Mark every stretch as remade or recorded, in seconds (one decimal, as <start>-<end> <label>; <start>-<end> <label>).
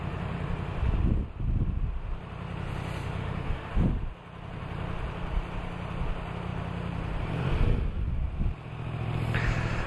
0.0-3.2 recorded; 3.2-3.7 remade; 3.7-9.9 recorded